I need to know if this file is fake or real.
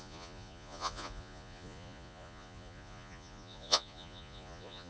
fake